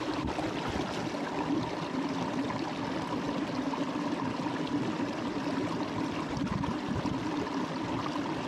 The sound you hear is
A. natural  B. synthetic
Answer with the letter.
A